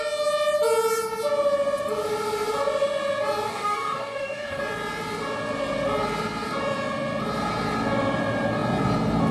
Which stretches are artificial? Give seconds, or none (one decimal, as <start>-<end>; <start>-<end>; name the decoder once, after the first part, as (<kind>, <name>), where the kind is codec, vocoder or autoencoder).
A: 3.5-4.6 (codec, DAC)